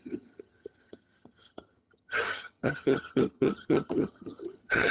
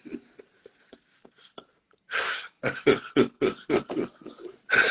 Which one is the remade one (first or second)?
first